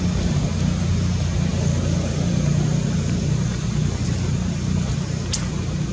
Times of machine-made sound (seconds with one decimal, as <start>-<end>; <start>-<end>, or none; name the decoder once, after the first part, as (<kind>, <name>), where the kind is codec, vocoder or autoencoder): none